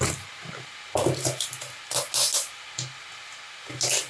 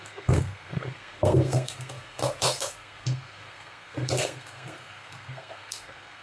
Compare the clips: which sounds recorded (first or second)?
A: first